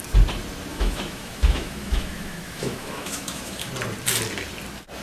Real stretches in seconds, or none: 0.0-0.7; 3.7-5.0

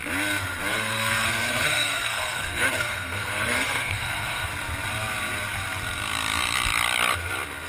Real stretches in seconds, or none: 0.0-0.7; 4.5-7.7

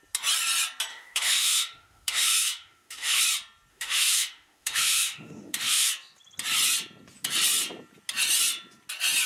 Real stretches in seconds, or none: 0.0-0.9; 3.2-3.7; 5.9-9.3

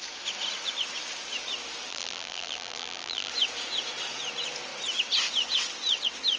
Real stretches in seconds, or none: 0.0-1.9; 3.3-6.4

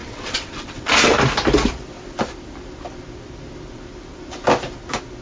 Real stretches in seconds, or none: 0.9-5.2